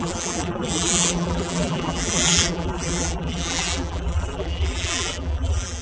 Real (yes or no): no